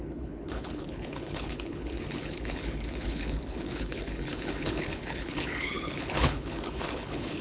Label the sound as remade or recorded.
remade